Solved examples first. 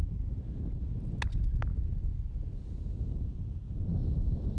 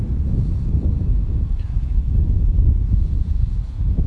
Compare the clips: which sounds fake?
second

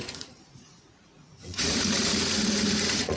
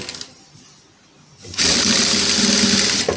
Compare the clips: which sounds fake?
first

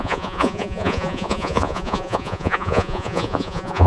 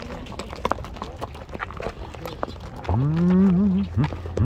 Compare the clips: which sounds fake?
first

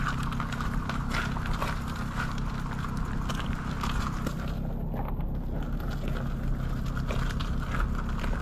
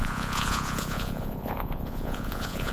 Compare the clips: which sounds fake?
second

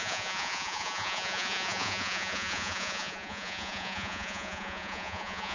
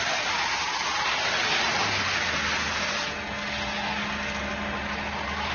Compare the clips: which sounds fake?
first